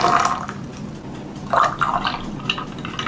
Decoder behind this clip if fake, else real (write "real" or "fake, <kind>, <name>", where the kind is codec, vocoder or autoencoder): real